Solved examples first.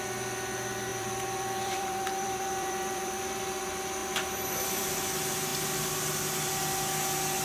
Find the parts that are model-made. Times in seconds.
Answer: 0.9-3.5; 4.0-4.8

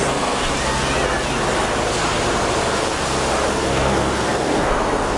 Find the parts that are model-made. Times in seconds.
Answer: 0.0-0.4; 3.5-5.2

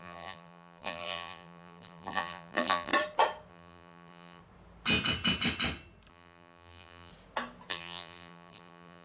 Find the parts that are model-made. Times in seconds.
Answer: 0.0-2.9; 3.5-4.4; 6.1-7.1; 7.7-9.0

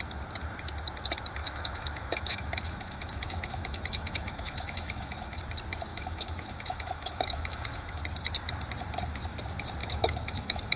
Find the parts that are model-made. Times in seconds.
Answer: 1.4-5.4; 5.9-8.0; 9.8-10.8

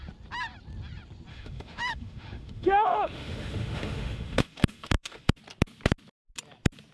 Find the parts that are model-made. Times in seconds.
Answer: 1.3-5.4